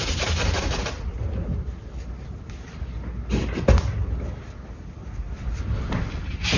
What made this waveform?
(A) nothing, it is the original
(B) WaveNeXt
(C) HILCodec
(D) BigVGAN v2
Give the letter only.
A